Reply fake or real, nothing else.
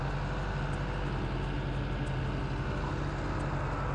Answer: real